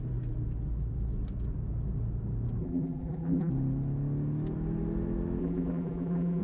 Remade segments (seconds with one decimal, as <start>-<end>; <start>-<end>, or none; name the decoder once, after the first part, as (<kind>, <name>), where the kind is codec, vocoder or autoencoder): 2.6-3.5 (vocoder, BigVGAN v2); 5.4-6.4